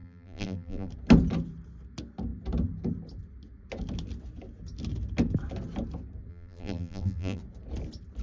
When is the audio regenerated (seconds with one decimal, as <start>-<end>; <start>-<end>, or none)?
0.0-0.9; 6.3-7.4